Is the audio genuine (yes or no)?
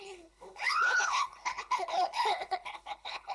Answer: no